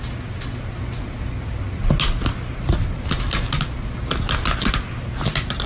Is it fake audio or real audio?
real